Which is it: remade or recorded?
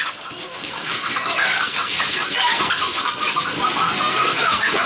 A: remade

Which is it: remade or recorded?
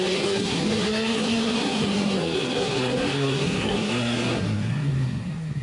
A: remade